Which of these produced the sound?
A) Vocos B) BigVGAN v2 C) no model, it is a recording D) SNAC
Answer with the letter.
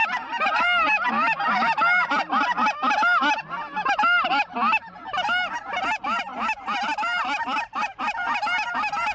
C